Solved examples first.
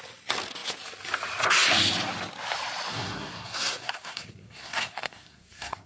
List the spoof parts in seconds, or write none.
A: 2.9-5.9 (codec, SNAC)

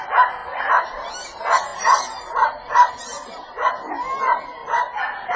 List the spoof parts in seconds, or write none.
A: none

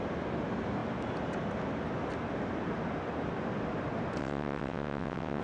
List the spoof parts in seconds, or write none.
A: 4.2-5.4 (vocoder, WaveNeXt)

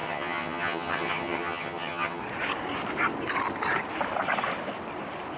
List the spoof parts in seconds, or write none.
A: 0.0-2.2 (vocoder, HiFi-GAN)

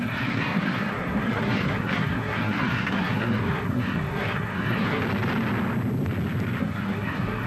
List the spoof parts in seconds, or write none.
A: 0.0-5.0 (codec, SNAC); 6.6-7.5

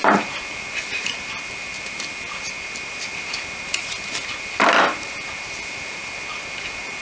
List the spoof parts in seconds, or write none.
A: none

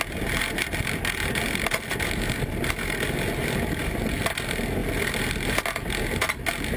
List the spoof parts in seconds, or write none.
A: none